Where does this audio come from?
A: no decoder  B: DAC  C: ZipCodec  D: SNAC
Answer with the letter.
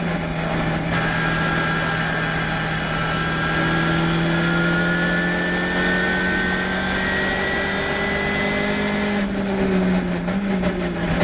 A